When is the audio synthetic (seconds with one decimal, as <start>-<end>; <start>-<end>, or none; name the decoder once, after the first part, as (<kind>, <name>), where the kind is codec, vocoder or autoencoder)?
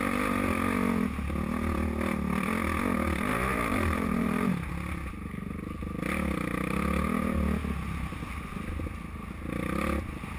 3.3-4.7 (vocoder, BigVGAN v2)